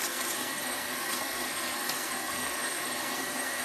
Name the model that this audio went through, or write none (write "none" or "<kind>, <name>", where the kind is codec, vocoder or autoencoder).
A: codec, SNAC